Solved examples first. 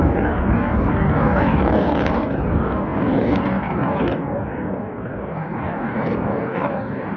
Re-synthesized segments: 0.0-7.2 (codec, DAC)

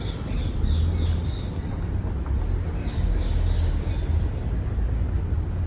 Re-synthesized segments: 2.8-3.9 (codec, DAC)

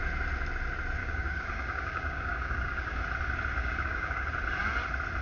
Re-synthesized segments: 1.0-3.0 (codec, DAC); 3.6-4.3

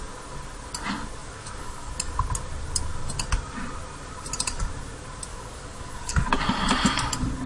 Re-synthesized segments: 1.2-1.9 (codec, DAC); 5.3-6.4

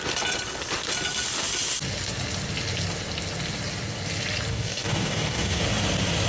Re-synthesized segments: 4.5-5.6 (codec, DAC)